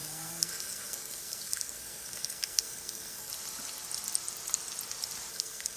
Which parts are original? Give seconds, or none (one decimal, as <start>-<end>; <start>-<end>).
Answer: 3.3-5.3